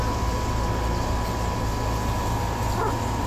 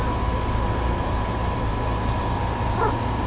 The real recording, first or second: first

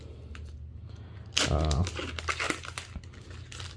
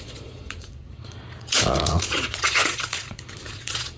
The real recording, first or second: first